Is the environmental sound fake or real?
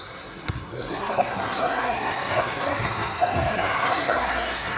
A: fake